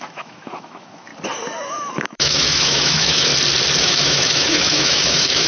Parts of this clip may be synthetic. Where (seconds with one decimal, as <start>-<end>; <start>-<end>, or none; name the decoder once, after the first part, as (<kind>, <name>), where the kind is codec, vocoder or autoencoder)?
0.0-1.1 (autoencoder, DAC-VAE); 1.7-3.3; 3.8-5.5